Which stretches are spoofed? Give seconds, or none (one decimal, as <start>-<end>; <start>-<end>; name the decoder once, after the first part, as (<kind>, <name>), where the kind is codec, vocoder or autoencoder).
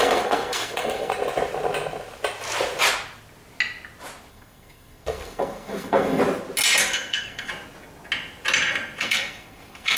0.0-1.1 (codec, SNAC); 4.3-6.2; 6.8-7.5; 9.0-10.0